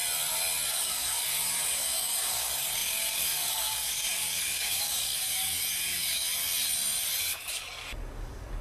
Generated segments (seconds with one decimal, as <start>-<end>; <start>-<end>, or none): 0.7-6.4; 7.2-8.6